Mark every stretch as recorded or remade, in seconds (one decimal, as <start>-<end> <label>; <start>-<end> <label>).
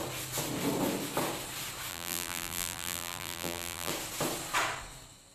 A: 0.0-1.9 recorded; 1.9-3.9 remade; 3.9-5.3 recorded